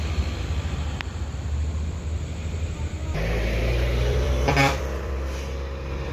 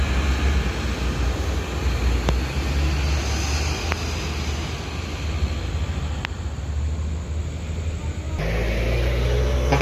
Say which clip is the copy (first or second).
first